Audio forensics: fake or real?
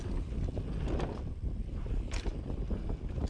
real